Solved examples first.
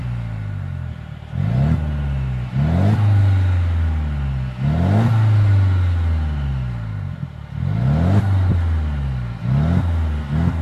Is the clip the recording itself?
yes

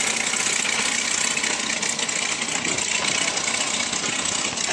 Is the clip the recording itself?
yes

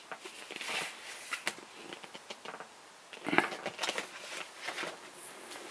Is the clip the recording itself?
yes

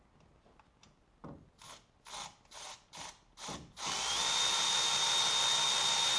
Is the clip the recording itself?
yes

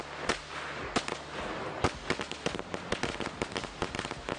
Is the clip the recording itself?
yes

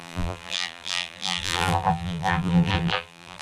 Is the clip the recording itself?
no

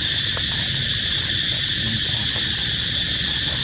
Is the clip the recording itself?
yes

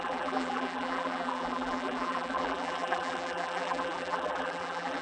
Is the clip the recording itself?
no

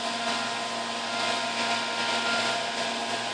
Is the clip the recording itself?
yes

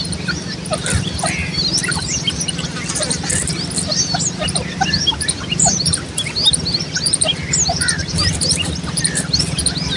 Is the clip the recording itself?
yes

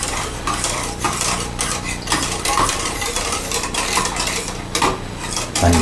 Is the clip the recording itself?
no